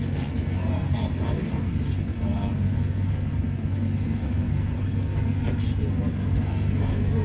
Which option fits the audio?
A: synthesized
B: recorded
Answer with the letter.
A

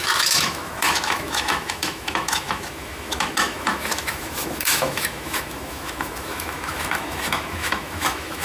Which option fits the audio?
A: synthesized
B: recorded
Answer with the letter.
A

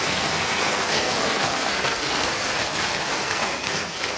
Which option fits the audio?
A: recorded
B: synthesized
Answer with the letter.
B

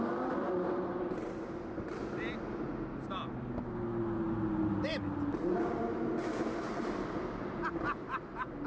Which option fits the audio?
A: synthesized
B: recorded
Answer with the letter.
B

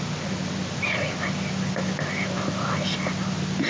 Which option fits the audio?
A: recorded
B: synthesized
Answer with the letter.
A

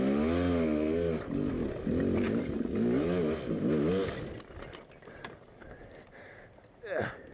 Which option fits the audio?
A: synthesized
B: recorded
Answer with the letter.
B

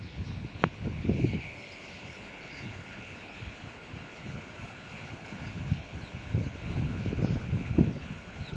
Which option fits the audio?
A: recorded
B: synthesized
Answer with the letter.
B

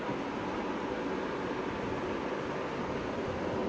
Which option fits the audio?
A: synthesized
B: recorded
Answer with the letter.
B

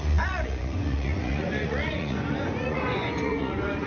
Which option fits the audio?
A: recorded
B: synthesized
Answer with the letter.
B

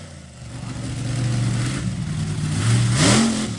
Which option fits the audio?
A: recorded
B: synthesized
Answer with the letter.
A